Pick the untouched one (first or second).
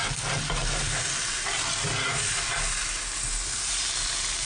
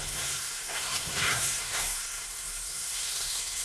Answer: first